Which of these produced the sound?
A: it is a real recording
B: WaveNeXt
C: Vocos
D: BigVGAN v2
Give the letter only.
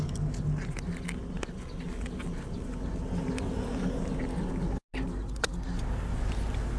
A